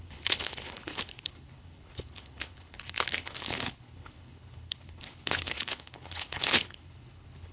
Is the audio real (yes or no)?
no